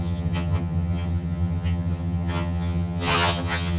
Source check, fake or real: fake